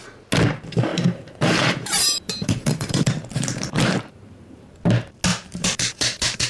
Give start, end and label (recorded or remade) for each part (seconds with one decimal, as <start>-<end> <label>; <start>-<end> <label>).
0.0-0.9 recorded; 0.9-4.8 remade; 4.8-5.3 recorded; 5.3-6.5 remade

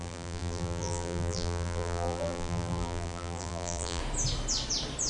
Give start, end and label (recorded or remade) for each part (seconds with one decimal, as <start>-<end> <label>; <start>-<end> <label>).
0.0-4.0 remade; 4.0-5.1 recorded

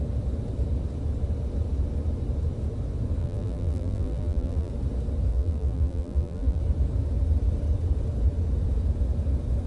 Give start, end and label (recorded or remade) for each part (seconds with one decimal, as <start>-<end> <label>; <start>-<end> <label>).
0.0-3.2 recorded; 3.2-4.7 remade; 4.7-5.3 recorded; 5.3-6.6 remade; 6.6-9.7 recorded

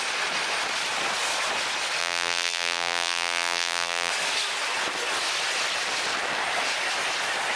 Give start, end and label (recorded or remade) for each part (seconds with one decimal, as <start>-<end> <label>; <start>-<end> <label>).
0.0-2.0 recorded; 2.0-4.1 remade; 4.1-7.6 recorded

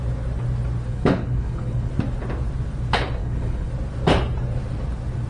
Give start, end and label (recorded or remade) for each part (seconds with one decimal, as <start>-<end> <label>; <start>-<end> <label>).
0.0-0.9 recorded; 0.9-1.9 remade; 1.9-3.2 recorded; 3.2-3.7 remade; 3.7-5.3 recorded

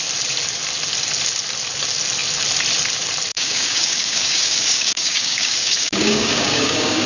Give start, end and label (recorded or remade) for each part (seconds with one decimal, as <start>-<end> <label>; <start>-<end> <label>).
0.0-3.3 recorded; 3.3-7.1 remade

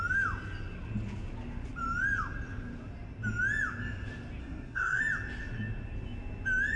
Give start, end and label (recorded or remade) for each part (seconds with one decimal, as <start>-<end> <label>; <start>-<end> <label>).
0.0-4.4 recorded; 4.4-5.0 remade; 5.0-6.8 recorded

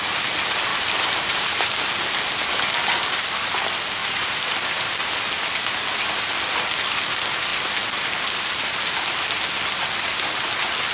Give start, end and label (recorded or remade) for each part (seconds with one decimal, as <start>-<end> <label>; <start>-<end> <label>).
0.0-0.7 recorded; 0.7-1.8 remade; 1.8-4.0 recorded; 4.0-5.1 remade; 5.1-10.9 recorded